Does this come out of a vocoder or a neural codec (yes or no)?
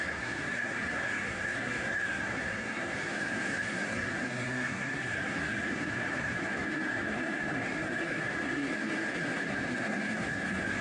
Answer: yes